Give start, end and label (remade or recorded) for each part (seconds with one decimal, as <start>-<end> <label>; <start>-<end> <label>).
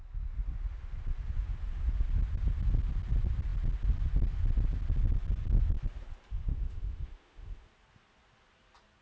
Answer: 0.0-6.5 recorded; 6.5-7.7 remade; 7.7-9.0 recorded